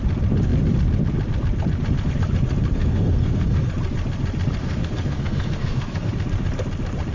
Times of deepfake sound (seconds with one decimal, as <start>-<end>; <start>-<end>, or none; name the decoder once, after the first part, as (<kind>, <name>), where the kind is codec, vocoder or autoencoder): 2.7-3.7 (codec, SNAC); 4.6-6.1